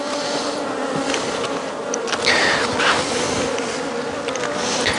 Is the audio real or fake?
real